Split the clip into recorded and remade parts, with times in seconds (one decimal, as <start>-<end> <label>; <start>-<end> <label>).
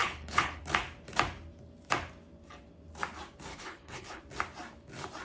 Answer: 0.0-0.6 remade; 0.6-3.5 recorded; 3.5-4.2 remade; 4.2-5.2 recorded